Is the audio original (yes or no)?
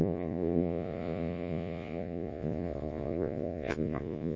no